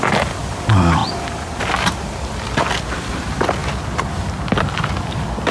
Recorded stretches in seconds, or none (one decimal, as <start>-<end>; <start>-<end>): 0.0-1.0; 1.6-5.5